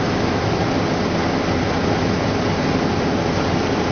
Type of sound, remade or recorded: recorded